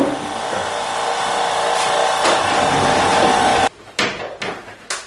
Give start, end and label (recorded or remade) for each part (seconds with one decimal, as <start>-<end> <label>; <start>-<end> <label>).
0.0-3.5 recorded; 3.5-4.3 remade; 4.3-5.1 recorded